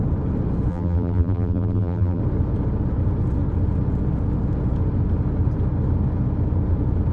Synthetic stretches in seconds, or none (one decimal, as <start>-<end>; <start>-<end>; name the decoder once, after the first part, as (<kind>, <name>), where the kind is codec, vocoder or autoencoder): 0.7-2.2 (vocoder, BigVGAN v2)